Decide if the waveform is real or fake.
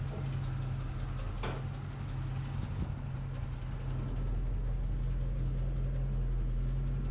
real